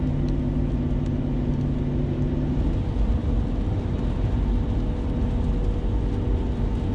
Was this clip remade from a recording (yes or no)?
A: no